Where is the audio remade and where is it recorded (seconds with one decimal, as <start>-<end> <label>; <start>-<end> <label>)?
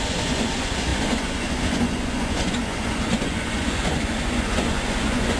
0.0-5.4 remade